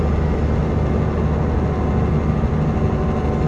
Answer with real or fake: real